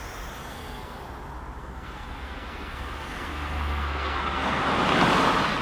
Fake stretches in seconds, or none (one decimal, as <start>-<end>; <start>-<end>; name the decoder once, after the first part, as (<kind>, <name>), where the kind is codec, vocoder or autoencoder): 0.4-1.0 (codec, SNAC); 1.6-4.6